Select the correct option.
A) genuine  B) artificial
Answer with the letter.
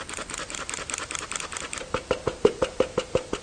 A